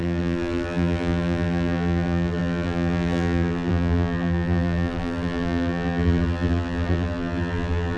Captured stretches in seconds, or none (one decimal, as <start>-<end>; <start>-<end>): none